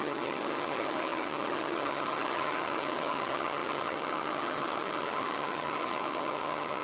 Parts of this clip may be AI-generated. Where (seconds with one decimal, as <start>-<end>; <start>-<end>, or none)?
0.0-6.8